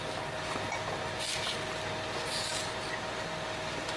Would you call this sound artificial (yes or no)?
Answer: no